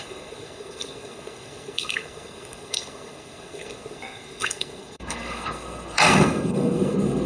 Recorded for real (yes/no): no